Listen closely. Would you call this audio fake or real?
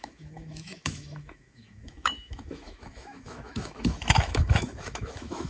fake